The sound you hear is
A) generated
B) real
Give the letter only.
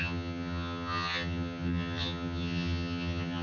A